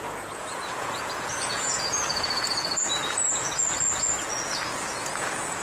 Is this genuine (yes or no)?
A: no